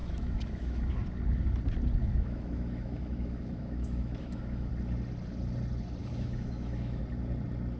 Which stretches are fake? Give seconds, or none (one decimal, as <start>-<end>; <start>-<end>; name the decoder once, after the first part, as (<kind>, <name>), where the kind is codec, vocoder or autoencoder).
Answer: 0.0-0.9 (autoencoder, DAC-VAE); 2.0-4.7; 6.0-7.0